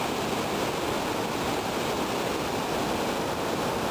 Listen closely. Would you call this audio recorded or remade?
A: recorded